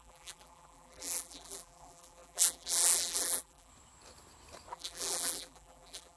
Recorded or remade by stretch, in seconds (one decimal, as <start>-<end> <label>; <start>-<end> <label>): 0.0-3.7 remade; 3.7-4.7 recorded; 4.7-6.2 remade